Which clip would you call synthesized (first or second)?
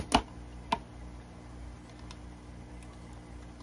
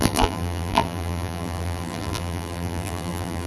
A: second